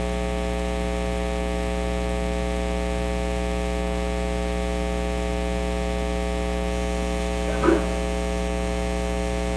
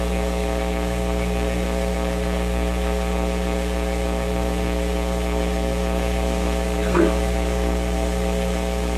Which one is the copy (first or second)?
second